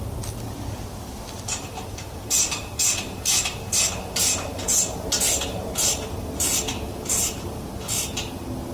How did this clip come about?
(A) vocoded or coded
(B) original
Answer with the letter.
A